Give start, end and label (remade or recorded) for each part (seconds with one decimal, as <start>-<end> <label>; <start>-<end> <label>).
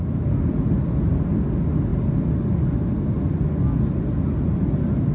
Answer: 0.0-5.1 recorded